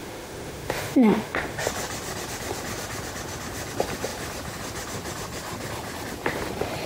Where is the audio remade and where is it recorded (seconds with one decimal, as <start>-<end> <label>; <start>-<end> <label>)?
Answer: 0.0-1.7 remade; 1.7-6.9 recorded